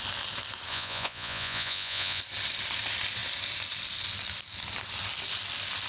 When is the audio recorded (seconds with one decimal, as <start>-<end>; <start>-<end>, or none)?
0.0-0.7; 2.2-5.9